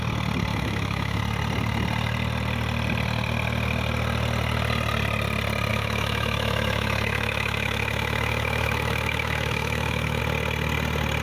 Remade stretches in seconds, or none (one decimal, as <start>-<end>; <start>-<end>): 0.5-1.2; 5.7-10.2